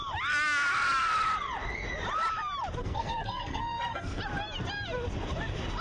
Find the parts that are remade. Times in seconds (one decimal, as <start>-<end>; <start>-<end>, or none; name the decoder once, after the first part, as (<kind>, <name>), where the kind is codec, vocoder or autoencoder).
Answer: 2.8-4.2 (codec, SNAC)